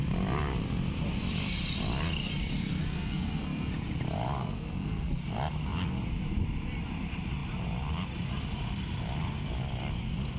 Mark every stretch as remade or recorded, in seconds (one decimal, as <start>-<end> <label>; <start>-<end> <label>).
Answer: 0.0-2.8 recorded; 2.8-3.7 remade; 3.7-4.4 recorded; 4.4-5.2 remade; 5.2-10.4 recorded